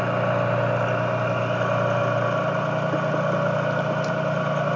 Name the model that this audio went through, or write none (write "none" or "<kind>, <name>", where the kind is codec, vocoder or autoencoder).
none